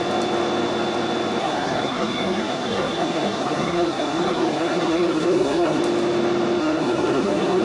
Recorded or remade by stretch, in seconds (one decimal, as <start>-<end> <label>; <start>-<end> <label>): 0.0-1.4 recorded; 1.4-5.8 remade; 5.8-6.6 recorded; 6.6-7.6 remade